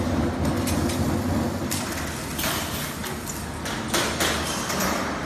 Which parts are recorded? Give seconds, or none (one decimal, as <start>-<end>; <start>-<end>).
0.0-5.3